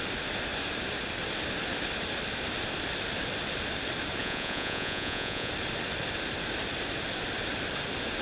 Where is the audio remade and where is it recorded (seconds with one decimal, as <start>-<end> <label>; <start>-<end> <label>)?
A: 0.0-4.2 recorded; 4.2-5.5 remade; 5.5-8.2 recorded